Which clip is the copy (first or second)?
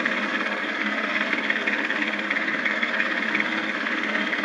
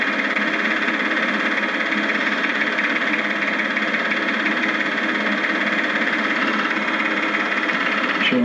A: first